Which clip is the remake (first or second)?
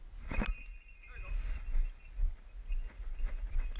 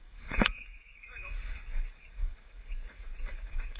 second